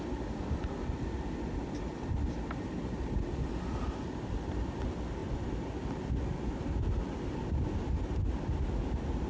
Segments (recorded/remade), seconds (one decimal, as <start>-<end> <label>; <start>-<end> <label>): 0.0-5.2 recorded; 5.2-6.2 remade; 6.2-9.3 recorded